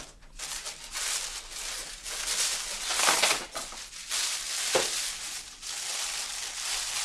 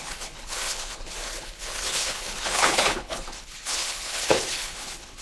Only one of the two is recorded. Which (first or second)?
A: first